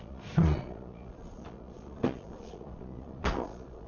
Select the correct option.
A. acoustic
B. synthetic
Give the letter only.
B